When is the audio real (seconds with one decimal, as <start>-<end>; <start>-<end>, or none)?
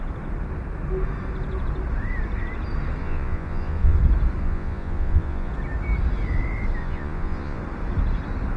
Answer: 0.0-3.0; 4.0-4.4; 5.5-6.8; 7.6-8.6